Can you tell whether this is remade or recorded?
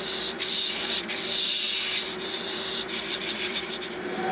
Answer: recorded